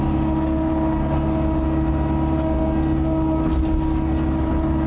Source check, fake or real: real